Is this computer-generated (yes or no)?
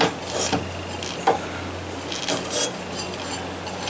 no